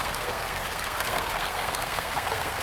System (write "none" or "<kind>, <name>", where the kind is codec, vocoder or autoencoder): codec, SNAC